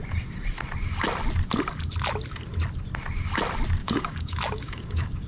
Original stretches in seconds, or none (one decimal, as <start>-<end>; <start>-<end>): 0.0-3.8